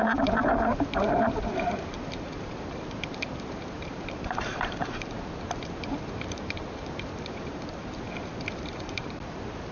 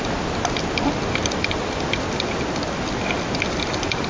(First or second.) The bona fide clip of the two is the second